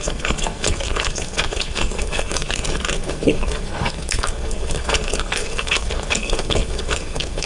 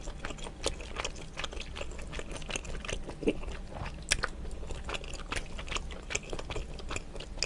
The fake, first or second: first